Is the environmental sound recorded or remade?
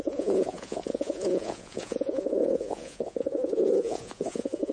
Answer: remade